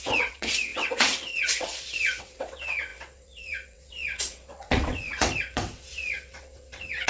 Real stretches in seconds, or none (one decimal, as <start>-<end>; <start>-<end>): none